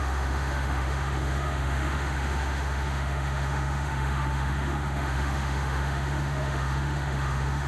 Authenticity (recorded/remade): remade